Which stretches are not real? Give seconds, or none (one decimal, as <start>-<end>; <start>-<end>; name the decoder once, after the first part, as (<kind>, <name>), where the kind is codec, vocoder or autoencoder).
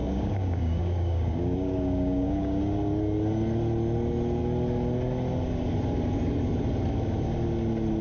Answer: 0.0-2.6 (codec, DAC)